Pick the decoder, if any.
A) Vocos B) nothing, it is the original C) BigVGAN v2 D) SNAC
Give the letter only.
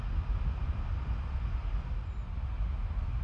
B